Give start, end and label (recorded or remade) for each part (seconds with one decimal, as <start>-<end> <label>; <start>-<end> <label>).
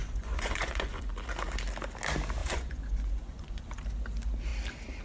0.0-1.1 remade; 1.1-2.4 recorded; 2.4-3.7 remade; 3.7-5.0 recorded